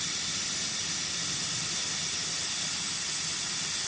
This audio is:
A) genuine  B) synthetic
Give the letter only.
A